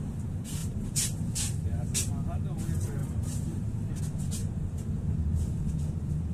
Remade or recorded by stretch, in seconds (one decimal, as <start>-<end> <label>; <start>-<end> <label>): 0.0-0.6 recorded; 0.6-2.1 remade; 2.1-3.0 recorded; 3.0-4.0 remade; 4.0-4.4 recorded; 4.4-5.7 remade; 5.7-6.3 recorded